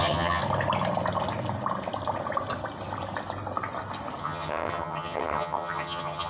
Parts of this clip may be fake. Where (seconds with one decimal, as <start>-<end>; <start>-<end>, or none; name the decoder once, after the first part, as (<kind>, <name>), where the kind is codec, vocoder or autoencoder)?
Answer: 0.0-0.4 (vocoder, HiFi-GAN); 4.2-6.3